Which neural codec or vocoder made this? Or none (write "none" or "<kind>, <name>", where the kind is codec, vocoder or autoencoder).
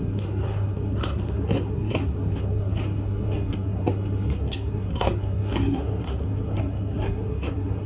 codec, SNAC